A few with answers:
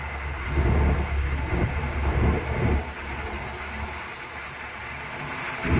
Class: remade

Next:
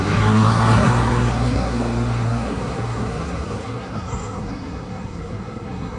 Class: remade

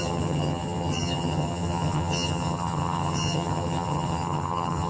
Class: remade